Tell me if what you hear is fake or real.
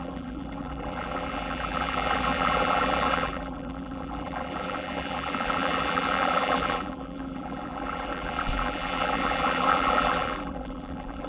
fake